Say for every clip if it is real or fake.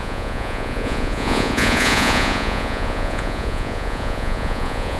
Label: fake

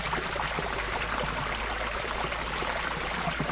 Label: real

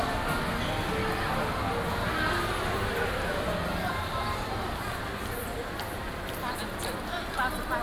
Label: real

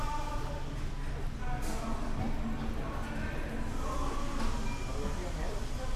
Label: real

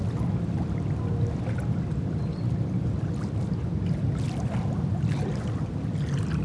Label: real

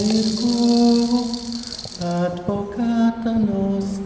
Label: real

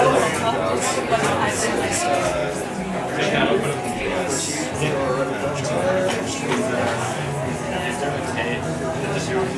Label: real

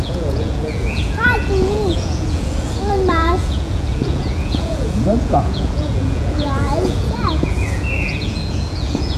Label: fake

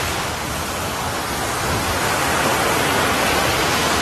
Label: real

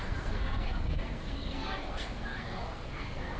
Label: fake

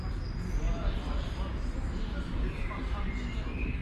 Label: real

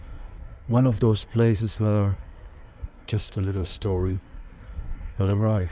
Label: fake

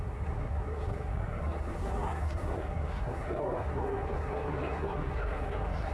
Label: fake